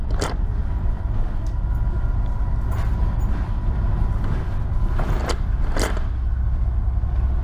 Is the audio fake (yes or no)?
no